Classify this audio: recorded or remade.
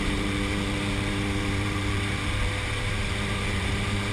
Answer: remade